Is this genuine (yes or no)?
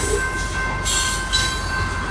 yes